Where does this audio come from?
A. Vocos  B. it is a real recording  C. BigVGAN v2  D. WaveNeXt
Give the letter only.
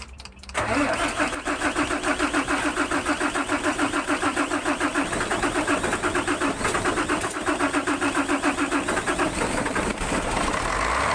B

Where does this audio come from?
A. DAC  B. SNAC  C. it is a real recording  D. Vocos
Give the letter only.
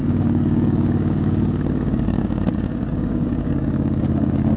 A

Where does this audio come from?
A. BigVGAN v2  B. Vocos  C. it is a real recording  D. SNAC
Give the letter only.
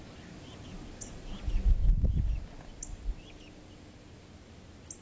C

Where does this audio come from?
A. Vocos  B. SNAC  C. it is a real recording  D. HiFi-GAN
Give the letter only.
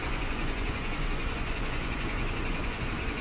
A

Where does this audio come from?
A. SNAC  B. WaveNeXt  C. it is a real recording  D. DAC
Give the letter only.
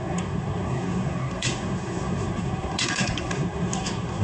A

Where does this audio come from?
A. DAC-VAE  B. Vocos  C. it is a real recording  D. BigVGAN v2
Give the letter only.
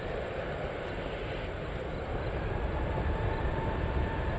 C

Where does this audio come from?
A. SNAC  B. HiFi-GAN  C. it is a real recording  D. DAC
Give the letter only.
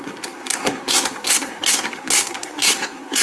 A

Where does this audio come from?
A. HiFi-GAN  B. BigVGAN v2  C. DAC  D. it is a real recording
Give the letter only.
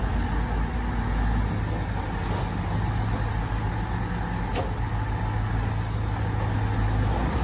D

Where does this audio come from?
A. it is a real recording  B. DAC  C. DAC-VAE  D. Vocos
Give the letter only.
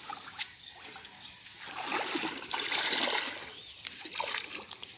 A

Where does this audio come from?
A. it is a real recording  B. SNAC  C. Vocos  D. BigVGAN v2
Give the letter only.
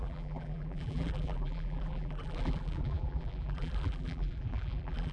D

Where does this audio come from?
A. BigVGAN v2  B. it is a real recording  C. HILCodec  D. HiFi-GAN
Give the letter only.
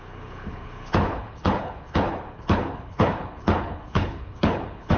C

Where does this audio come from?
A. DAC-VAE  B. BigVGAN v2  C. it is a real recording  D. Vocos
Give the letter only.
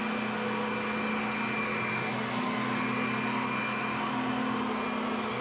C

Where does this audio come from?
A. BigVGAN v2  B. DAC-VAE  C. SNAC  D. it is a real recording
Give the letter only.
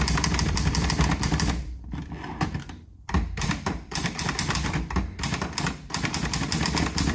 A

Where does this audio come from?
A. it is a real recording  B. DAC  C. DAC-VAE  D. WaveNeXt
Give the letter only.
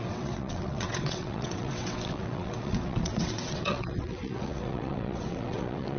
D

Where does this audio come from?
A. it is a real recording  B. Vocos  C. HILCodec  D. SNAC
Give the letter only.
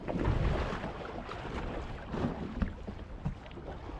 A